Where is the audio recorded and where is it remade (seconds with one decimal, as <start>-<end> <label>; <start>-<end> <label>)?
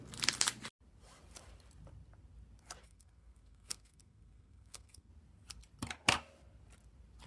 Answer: 0.0-2.8 recorded; 2.8-5.1 remade; 5.1-7.3 recorded